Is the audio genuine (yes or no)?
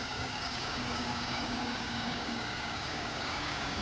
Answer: no